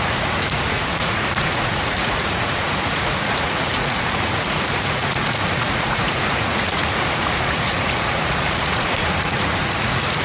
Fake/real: fake